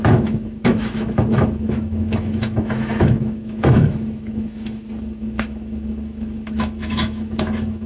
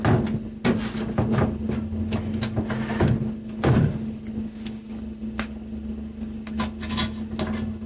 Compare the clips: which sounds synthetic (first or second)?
first